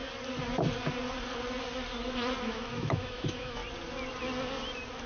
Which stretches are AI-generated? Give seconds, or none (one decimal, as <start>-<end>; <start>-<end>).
2.4-3.6